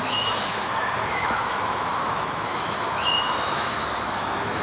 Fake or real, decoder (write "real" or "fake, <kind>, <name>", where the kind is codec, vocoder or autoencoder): fake, autoencoder, DAC-VAE